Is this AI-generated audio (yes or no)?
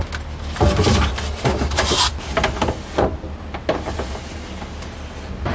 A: no